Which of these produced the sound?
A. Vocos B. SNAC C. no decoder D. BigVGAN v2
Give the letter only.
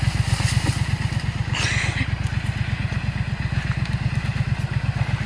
C